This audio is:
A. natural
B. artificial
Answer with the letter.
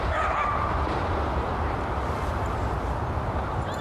A